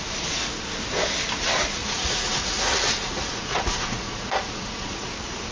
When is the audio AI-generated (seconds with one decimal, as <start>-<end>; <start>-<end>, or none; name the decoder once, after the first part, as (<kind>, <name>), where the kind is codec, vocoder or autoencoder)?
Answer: 1.8-5.1 (vocoder, Vocos)